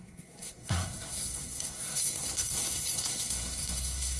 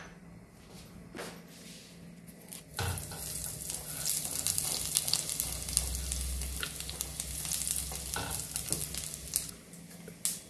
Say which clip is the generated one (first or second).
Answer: first